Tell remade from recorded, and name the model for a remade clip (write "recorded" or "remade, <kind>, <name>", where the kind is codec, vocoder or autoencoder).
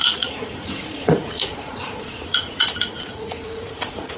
remade, vocoder, Vocos